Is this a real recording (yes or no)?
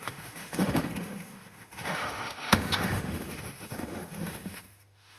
no